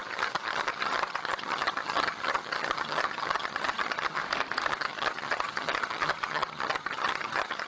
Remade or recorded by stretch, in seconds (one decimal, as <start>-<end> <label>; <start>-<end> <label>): 0.0-4.2 remade; 4.2-4.7 recorded; 4.7-7.7 remade